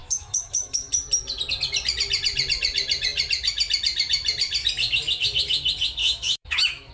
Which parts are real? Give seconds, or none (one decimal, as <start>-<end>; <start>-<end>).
0.9-6.0